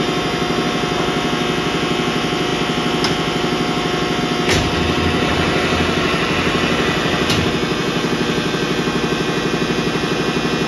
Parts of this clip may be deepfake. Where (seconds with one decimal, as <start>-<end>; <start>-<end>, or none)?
none

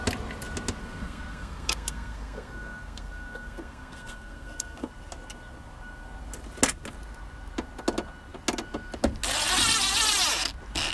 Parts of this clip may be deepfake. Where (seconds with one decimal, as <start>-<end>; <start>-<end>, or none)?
0.8-4.9

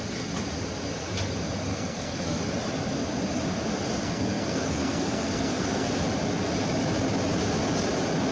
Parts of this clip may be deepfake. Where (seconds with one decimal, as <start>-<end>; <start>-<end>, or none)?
1.7-2.4; 4.0-5.9

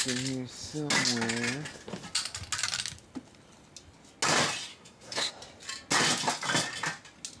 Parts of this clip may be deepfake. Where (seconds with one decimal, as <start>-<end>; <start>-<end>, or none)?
4.7-5.3

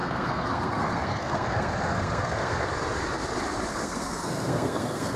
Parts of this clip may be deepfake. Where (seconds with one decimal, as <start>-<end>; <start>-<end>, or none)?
0.0-2.7; 3.7-5.2

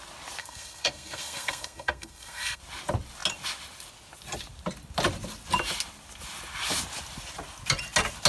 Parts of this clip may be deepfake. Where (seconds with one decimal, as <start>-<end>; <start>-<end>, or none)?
0.4-2.6